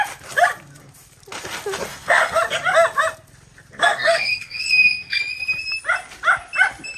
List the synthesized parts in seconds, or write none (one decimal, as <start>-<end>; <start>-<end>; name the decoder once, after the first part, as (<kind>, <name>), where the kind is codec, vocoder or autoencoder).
1.9-2.4 (codec, SNAC); 3.8-5.2

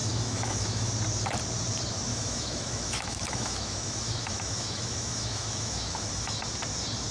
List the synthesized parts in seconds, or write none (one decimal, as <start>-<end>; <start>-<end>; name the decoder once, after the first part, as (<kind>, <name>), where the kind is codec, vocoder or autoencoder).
0.0-0.9 (autoencoder, DAC-VAE); 2.1-6.4

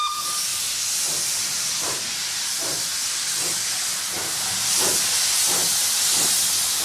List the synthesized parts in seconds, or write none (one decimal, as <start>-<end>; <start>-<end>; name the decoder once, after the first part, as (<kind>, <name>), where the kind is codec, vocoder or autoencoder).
0.5-1.0 (vocoder, BigVGAN v2); 3.0-3.7